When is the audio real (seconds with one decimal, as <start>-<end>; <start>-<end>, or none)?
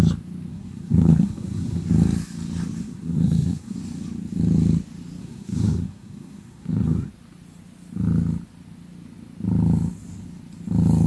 0.0-0.5; 1.9-2.8; 3.8-5.2; 7.1-11.1